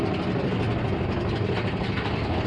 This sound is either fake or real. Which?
real